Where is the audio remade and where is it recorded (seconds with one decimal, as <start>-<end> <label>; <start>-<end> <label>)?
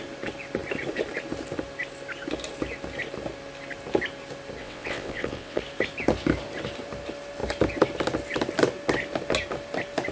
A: 0.0-4.6 recorded; 4.6-5.6 remade; 5.6-10.1 recorded